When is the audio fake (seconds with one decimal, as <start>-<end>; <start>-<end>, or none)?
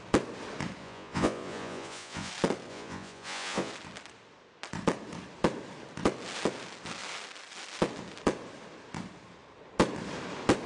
0.8-2.3; 2.7-3.7